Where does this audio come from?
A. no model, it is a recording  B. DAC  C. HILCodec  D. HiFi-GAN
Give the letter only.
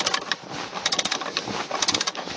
A